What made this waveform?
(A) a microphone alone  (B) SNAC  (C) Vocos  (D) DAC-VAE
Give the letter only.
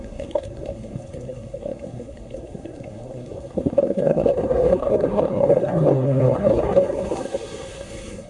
B